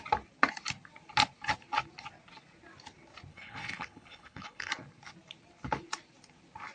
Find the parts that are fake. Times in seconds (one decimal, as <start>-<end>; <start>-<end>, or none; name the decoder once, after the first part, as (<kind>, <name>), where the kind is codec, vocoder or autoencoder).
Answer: 3.3-4.7 (codec, HILCodec)